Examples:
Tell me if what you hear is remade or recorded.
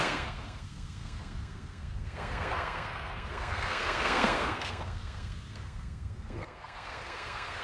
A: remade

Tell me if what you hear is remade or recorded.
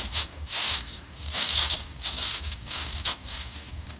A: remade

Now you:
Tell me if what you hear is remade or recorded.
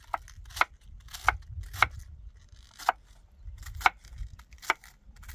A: recorded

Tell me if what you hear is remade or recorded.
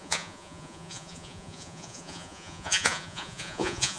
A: remade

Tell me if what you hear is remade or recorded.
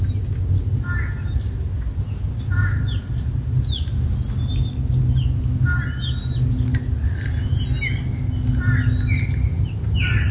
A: recorded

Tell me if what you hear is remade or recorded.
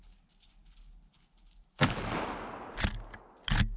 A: recorded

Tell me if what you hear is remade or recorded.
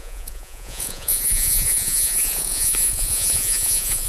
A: remade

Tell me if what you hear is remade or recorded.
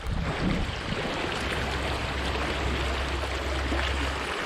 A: recorded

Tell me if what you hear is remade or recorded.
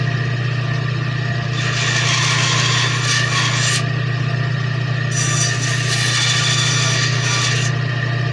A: recorded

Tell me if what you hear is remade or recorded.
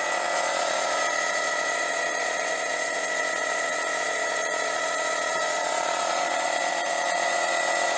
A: remade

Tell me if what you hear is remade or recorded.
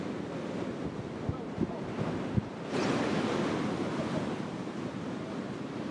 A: recorded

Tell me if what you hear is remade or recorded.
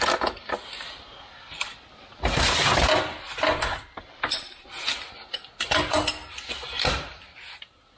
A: recorded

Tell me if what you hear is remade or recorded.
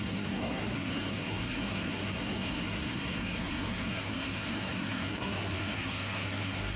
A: remade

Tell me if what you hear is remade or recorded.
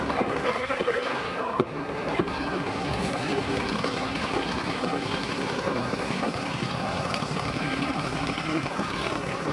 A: remade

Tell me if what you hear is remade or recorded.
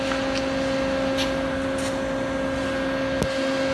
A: recorded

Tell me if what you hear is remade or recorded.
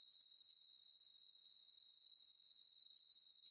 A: recorded